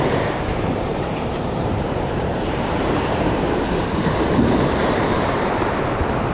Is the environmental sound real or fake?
fake